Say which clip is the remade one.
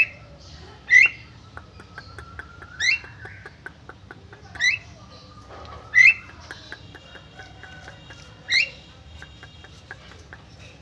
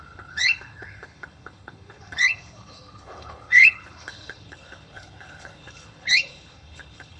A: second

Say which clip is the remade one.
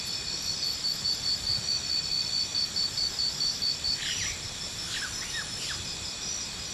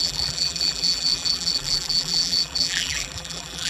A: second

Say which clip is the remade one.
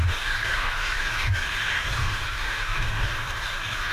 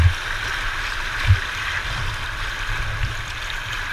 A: first